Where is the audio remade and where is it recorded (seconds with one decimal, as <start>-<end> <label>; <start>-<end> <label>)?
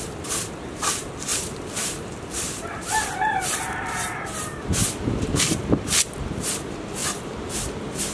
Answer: 0.0-1.3 recorded; 1.3-3.4 remade; 3.4-4.8 recorded; 4.8-6.0 remade; 6.0-7.0 recorded; 7.0-7.5 remade; 7.5-8.1 recorded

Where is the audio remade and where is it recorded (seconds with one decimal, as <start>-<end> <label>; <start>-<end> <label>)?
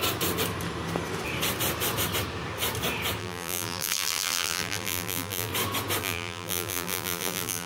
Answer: 0.0-3.2 recorded; 3.2-5.5 remade; 5.5-6.0 recorded; 6.0-7.7 remade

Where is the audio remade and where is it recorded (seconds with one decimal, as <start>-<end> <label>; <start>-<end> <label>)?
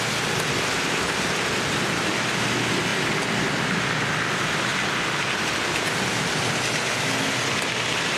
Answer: 0.0-8.2 recorded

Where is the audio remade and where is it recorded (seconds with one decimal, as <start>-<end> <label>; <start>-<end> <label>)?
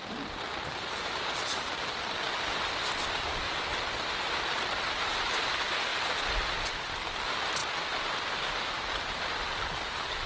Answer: 0.0-5.9 remade; 5.9-6.8 recorded; 6.8-7.6 remade; 7.6-9.2 recorded; 9.2-10.3 remade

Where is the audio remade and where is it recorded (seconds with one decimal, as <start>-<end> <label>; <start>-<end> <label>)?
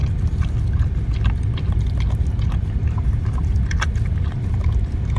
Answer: 0.0-3.0 recorded; 3.0-5.2 remade